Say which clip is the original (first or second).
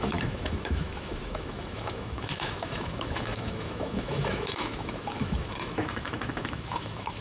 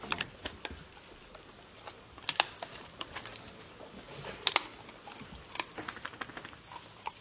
second